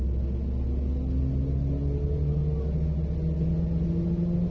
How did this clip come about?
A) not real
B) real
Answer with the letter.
B